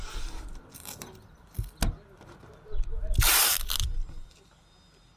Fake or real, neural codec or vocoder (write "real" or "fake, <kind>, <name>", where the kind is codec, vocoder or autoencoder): real